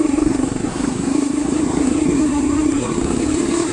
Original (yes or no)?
no